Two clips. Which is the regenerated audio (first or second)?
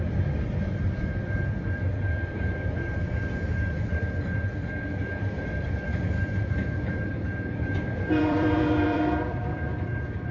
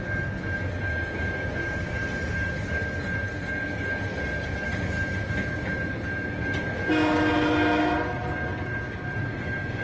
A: first